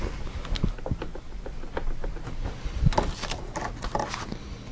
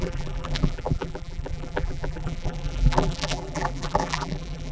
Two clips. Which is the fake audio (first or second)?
second